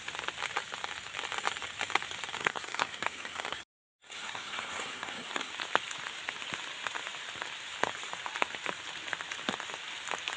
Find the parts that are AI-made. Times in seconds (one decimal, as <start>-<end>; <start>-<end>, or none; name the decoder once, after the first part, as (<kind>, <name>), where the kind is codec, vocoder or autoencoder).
2.4-5.5 (codec, SNAC)